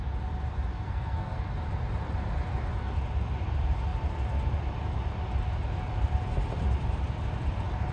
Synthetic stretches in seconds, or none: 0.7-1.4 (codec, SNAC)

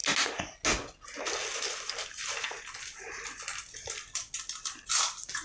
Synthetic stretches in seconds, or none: none

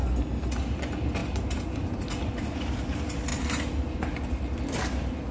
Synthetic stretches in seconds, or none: 0.0-0.5 (codec, SNAC)

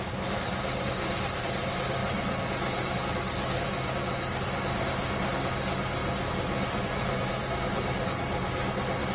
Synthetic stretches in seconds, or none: none

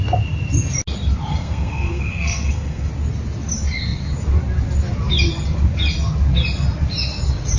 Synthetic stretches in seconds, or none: 1.3-2.9 (codec, SNAC)

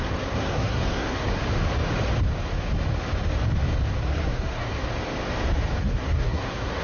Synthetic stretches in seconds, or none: 0.0-1.4 (codec, SNAC); 4.0-4.9; 5.8-6.8

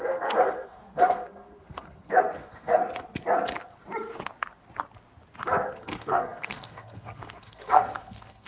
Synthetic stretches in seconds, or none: 0.0-2.8 (codec, SNAC); 5.7-8.5